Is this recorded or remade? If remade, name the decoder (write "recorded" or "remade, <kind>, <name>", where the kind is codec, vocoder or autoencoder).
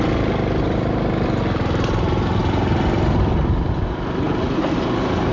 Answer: recorded